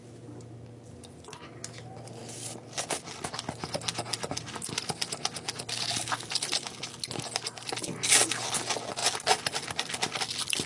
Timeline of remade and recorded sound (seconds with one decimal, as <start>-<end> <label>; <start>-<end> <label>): 0.0-10.7 recorded

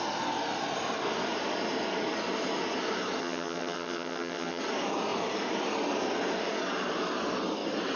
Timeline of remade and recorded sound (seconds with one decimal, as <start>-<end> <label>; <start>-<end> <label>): 0.0-3.2 recorded; 3.2-4.6 remade; 4.6-8.0 recorded

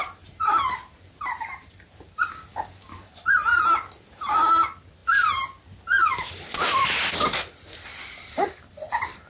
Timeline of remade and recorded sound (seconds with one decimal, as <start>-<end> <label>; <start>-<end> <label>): 0.0-2.5 recorded; 2.5-3.1 remade; 3.1-8.0 recorded; 8.0-8.7 remade; 8.7-9.3 recorded

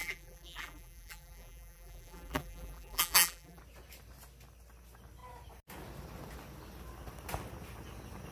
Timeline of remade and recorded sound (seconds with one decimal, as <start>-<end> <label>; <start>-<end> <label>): 0.0-3.6 remade; 3.6-8.3 recorded

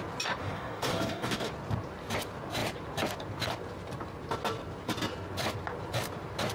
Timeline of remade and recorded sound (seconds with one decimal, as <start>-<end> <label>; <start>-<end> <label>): 0.0-0.4 recorded; 0.4-1.5 remade; 1.5-6.5 recorded

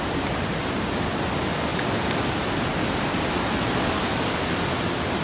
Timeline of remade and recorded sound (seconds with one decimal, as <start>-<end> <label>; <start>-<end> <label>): 0.0-5.2 recorded